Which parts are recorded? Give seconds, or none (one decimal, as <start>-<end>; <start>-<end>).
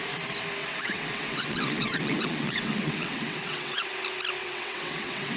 0.0-0.6; 3.8-4.4